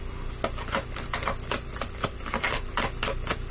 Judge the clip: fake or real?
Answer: real